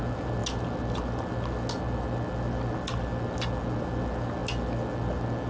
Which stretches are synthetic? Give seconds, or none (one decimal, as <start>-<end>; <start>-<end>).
none